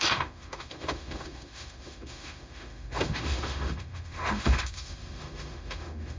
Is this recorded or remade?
remade